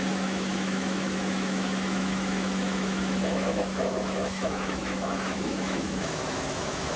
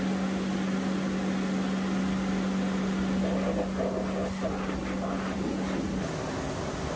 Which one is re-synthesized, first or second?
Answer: first